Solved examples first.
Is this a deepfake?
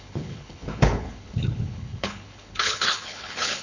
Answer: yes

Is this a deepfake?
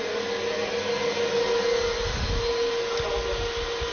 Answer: no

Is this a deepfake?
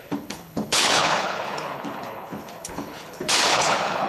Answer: yes